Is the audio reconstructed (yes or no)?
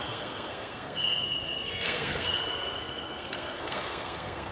yes